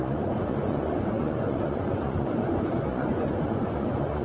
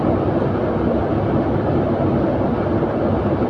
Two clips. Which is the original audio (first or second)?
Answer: second